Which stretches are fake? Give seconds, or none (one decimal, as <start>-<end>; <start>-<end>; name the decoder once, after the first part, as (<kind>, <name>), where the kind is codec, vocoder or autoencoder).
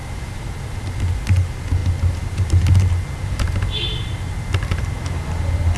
0.0-1.0 (vocoder, BigVGAN v2); 1.8-5.3